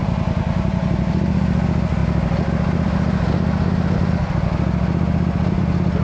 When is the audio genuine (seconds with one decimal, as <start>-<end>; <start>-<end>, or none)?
0.0-6.0